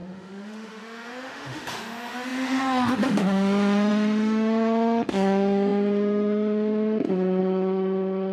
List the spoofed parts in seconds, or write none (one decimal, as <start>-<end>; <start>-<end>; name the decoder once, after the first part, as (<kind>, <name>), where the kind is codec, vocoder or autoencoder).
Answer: 0.0-8.3 (autoencoder, DAC-VAE)